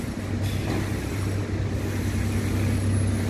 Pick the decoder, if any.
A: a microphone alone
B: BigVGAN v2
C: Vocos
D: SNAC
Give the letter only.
A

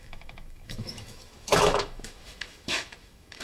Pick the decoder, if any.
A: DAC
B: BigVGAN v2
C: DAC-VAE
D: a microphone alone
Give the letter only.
C